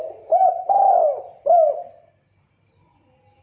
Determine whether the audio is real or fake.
real